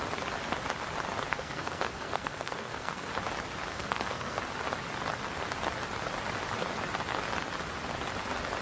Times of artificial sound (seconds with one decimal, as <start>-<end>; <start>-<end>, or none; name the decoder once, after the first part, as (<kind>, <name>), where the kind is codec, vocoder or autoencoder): 1.3-3.1 (codec, SNAC); 3.7-4.4